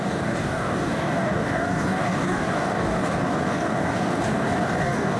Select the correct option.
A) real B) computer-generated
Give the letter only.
B